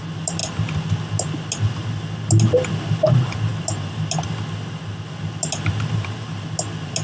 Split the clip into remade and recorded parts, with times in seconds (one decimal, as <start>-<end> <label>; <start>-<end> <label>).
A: 0.0-7.0 recorded